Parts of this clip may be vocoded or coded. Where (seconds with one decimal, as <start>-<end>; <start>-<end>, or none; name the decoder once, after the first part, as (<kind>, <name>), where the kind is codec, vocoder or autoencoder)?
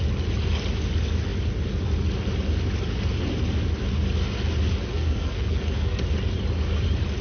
4.9-6.0 (codec, SNAC)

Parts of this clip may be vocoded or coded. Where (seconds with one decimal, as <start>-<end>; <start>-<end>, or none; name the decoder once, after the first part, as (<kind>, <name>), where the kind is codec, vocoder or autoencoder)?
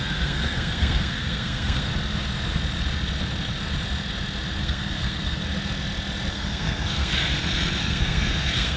0.0-1.9 (codec, SNAC); 4.6-5.4; 6.3-7.1; 7.8-8.8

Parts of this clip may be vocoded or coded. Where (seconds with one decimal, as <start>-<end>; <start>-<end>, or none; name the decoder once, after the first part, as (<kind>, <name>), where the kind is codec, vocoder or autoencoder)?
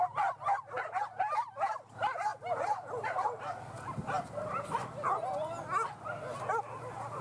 none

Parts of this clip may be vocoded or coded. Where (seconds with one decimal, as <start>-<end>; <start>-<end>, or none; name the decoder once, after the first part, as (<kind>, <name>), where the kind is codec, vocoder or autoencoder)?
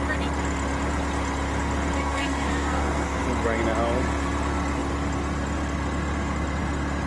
2.0-3.2 (codec, SNAC)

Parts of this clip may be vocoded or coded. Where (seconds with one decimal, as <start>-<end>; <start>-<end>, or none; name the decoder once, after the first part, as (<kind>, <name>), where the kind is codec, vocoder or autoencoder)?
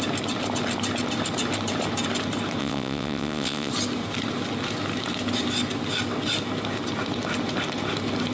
2.6-3.7 (vocoder, WaveNeXt)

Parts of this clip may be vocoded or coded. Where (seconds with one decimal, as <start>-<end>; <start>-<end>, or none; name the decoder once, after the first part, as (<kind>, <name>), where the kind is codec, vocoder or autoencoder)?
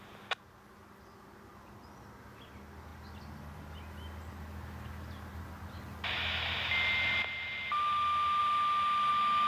none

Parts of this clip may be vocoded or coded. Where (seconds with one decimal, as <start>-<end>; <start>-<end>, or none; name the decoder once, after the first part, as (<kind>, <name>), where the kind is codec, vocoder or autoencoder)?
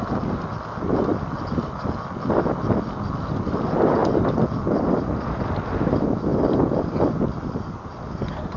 none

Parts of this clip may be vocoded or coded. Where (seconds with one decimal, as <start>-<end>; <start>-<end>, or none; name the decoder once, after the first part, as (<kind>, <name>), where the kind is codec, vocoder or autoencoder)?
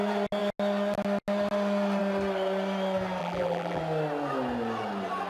3.2-3.8 (vocoder, BigVGAN v2)